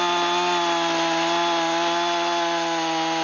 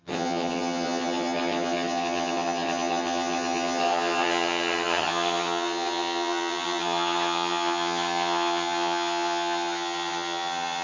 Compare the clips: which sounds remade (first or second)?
second